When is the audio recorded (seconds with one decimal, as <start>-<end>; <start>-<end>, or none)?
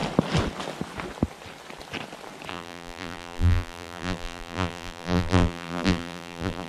0.0-2.5